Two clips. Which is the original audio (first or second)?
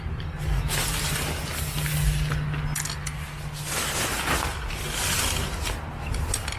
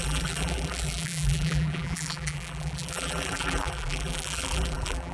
first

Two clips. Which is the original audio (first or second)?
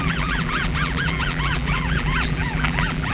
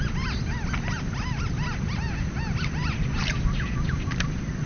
second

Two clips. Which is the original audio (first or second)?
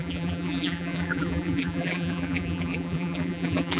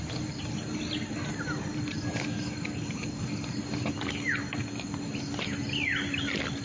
second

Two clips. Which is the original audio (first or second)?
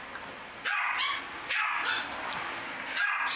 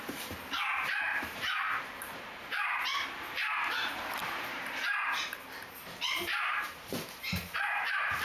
first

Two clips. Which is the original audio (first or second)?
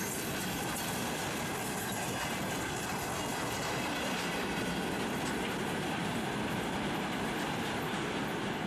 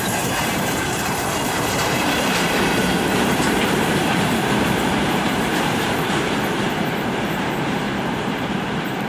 first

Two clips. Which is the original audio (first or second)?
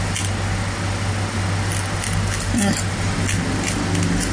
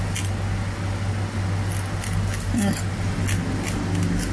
second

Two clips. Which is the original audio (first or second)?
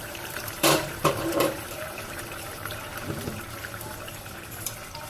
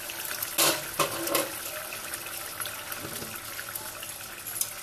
second